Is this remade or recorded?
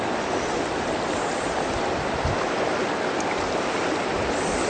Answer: recorded